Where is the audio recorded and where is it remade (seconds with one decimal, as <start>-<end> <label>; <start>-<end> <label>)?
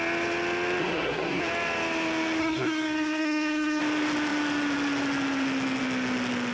0.0-0.8 recorded; 0.8-1.4 remade; 1.4-2.4 recorded; 2.4-3.8 remade; 3.8-6.5 recorded